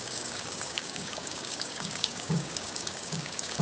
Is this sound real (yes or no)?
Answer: no